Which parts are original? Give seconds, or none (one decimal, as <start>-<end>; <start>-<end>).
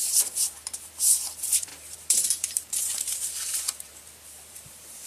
none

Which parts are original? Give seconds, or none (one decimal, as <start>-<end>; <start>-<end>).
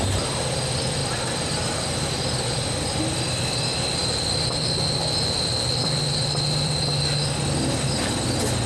0.0-1.0; 2.9-4.0; 6.8-8.7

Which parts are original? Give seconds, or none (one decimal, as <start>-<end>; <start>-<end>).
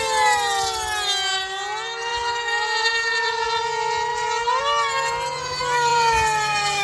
0.0-2.1; 3.4-4.1; 4.6-5.9